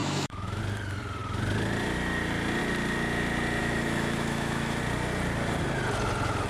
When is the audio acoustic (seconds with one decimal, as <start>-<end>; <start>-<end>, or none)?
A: 0.6-3.6; 4.8-6.5